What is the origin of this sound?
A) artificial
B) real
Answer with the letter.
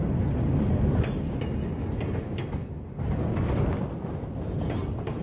B